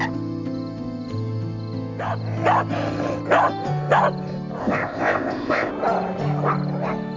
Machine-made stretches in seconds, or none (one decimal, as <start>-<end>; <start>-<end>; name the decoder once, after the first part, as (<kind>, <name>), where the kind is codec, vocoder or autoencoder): 4.6-5.7 (codec, ZipCodec)